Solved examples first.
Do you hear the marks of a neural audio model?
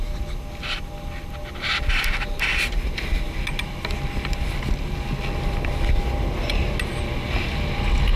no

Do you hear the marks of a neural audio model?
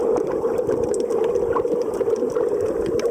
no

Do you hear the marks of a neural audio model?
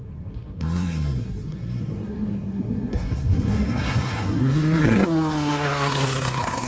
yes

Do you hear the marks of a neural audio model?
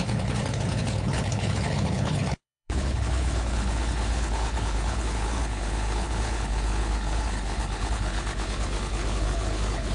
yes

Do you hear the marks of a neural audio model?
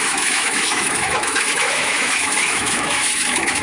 yes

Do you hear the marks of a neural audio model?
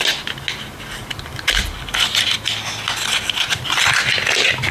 no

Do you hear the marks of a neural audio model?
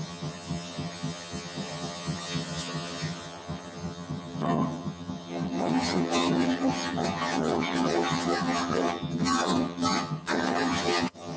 yes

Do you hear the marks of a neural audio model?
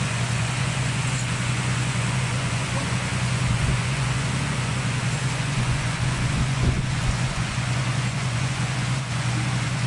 yes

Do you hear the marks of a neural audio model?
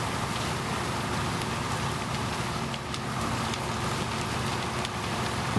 no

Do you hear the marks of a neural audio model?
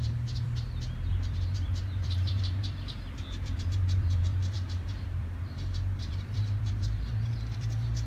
yes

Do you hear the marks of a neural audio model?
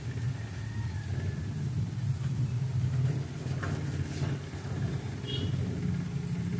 no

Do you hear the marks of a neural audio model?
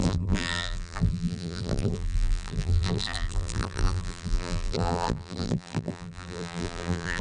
yes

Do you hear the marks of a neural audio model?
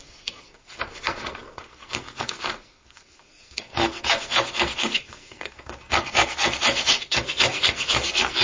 yes